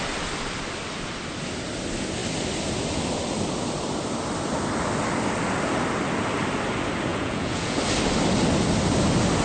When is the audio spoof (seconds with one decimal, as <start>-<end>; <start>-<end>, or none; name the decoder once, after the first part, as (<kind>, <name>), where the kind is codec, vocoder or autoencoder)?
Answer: 7.1-7.8 (vocoder, Vocos)

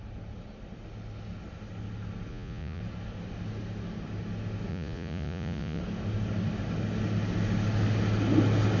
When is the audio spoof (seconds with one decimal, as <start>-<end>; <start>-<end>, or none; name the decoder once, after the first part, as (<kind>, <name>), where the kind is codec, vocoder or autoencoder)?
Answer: 2.3-2.8 (vocoder, Vocos); 4.7-5.8

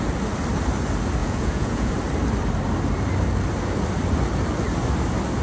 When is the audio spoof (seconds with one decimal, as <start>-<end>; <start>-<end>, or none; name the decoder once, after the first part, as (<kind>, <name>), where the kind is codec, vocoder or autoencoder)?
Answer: 1.2-1.9 (vocoder, Vocos)

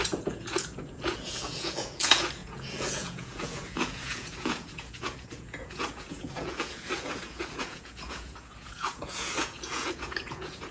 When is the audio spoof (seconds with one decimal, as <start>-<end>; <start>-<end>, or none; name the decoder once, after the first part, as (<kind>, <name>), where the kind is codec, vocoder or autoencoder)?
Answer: 0.0-10.7 (vocoder, Vocos)

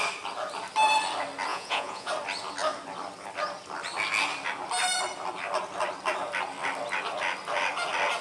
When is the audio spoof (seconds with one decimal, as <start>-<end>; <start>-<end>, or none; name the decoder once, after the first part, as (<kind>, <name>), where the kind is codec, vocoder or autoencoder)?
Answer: 1.5-2.1 (vocoder, Vocos)

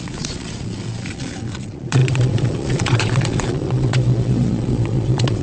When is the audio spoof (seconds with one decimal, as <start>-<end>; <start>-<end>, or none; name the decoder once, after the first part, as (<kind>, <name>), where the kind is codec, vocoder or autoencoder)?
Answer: 0.0-5.4 (vocoder, Vocos)

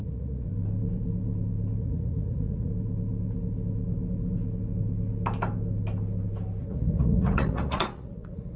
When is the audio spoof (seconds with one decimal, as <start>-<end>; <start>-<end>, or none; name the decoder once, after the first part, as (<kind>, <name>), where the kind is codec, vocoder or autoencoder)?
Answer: 0.0-0.5 (vocoder, Vocos); 1.8-2.7; 6.6-8.6